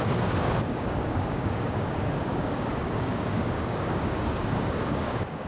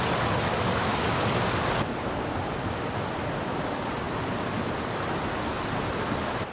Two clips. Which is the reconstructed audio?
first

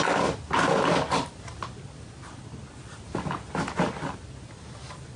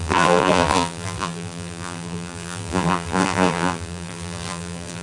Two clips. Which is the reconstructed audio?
second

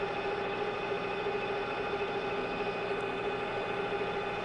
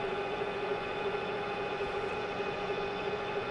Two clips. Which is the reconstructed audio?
second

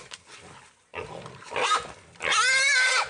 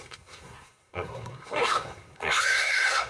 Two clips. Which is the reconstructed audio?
second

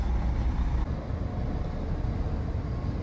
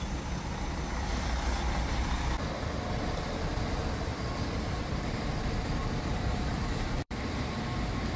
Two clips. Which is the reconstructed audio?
second